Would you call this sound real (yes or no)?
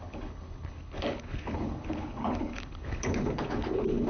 no